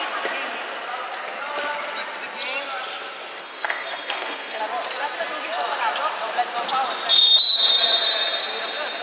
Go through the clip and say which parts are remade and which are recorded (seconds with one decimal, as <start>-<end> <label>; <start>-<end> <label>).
0.0-3.4 recorded; 3.4-4.6 remade; 4.6-9.0 recorded